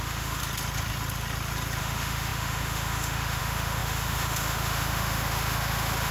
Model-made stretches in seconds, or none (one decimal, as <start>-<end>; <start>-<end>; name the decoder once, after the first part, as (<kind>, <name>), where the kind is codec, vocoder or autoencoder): 0.0-0.4 (autoencoder, DAC-VAE); 1.8-6.1